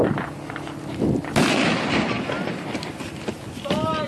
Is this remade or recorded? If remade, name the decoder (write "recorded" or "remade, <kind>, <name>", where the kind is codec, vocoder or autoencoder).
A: recorded